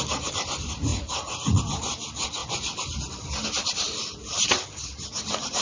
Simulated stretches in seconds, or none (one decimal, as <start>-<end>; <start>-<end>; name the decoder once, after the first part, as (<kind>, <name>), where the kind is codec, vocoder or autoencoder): 0.9-1.6 (vocoder, Vocos)